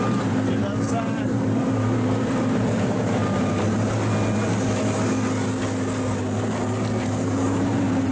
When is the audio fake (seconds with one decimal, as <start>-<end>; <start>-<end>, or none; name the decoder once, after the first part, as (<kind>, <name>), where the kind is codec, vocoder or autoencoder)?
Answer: 0.0-3.2 (vocoder, BigVGAN v2); 7.0-8.1